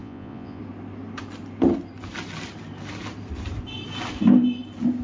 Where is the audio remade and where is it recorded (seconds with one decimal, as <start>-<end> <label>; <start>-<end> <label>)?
0.0-0.6 remade; 0.6-5.0 recorded